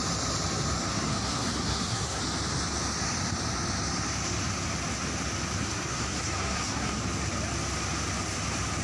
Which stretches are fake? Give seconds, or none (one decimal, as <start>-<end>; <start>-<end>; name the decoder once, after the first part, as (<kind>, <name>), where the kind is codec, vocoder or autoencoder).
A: 0.9-2.2 (codec, SNAC); 5.6-7.0